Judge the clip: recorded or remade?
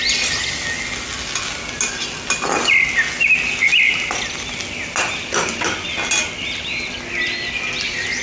recorded